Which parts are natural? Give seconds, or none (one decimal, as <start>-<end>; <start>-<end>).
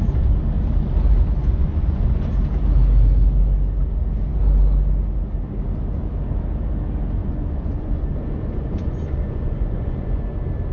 0.0-1.4; 2.3-7.2; 10.2-10.7